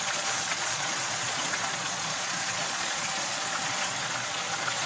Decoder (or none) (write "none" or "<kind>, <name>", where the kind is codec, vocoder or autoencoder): vocoder, Vocos